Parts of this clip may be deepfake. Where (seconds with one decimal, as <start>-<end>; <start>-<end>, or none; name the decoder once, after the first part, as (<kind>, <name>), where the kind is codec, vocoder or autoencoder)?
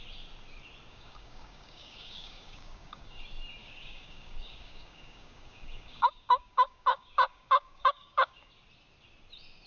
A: 0.9-3.2 (codec, DAC); 3.6-8.5